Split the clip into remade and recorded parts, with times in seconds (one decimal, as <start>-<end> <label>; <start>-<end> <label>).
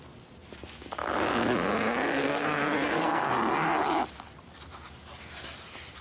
0.0-2.2 recorded; 2.2-3.3 remade; 3.3-6.0 recorded